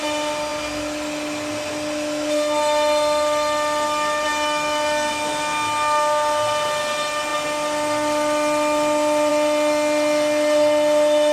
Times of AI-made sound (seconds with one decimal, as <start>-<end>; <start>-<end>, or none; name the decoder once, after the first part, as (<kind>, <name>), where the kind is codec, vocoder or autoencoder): none